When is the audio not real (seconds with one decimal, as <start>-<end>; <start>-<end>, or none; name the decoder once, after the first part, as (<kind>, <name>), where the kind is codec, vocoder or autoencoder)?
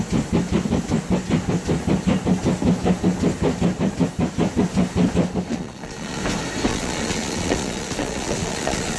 5.5-6.2 (vocoder, Vocos); 6.7-9.0